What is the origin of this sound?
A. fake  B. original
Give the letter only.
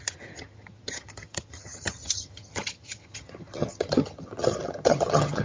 A